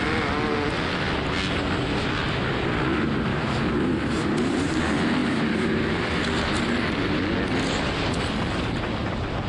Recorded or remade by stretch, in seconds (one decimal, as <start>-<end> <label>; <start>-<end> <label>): 0.0-3.3 recorded; 3.3-4.8 remade; 4.8-5.2 recorded; 5.2-6.2 remade; 6.2-9.0 recorded; 9.0-9.5 remade